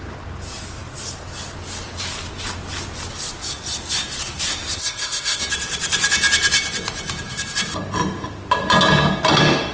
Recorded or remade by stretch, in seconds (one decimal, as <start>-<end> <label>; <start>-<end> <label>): 0.0-4.8 recorded; 4.8-5.4 remade; 5.4-9.7 recorded

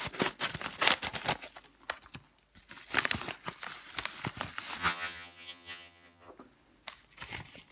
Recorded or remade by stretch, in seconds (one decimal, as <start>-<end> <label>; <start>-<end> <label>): 0.0-4.8 recorded; 4.8-6.3 remade; 6.3-7.7 recorded

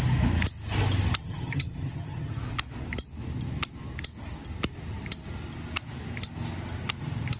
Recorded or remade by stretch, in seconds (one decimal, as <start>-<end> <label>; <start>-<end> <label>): 0.0-1.2 recorded; 1.2-2.3 remade; 2.3-7.4 recorded

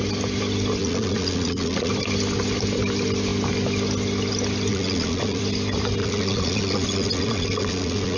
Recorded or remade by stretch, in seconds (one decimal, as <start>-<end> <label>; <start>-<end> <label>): 0.0-0.8 recorded; 0.8-1.9 remade; 1.9-4.7 recorded; 4.7-5.4 remade; 5.4-6.0 recorded; 6.0-8.2 remade

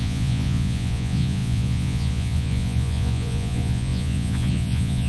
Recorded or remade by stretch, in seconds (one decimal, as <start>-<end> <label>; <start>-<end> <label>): 0.0-5.1 remade